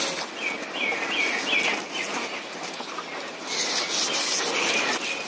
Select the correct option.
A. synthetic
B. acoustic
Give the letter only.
B